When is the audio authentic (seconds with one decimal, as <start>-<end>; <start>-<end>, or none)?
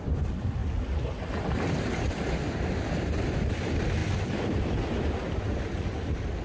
0.0-6.4